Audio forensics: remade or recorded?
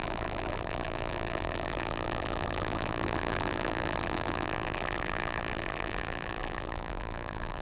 remade